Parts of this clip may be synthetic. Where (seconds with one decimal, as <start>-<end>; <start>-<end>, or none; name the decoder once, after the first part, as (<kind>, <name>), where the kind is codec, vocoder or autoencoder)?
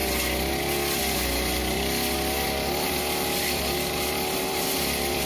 1.0-5.2 (vocoder, BigVGAN v2)